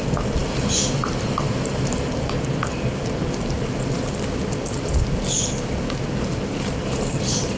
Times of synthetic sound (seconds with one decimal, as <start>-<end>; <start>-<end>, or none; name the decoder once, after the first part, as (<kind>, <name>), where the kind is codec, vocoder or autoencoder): none